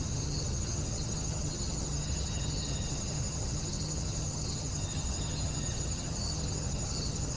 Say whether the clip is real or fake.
fake